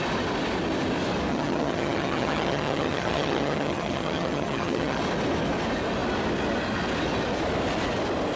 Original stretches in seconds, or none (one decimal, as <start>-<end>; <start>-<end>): 0.0-1.3; 5.0-8.4